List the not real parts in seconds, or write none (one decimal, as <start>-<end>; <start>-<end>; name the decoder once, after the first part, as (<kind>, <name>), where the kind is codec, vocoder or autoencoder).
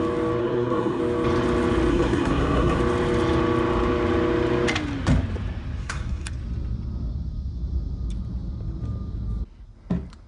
0.4-1.0 (codec, SNAC); 1.9-2.8; 5.8-6.3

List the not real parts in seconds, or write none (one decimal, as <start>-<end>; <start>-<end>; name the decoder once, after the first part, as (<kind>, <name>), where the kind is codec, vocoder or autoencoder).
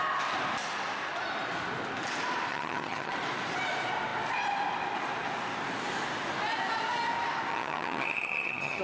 2.5-3.1 (vocoder, HiFi-GAN); 7.5-8.8